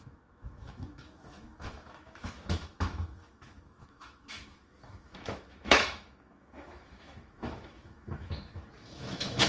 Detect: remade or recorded remade